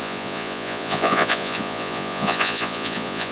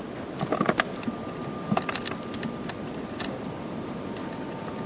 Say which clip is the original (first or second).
second